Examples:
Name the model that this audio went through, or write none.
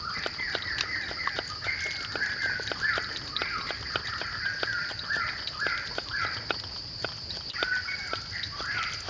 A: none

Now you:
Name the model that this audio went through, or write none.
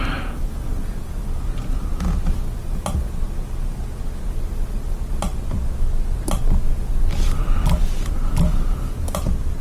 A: none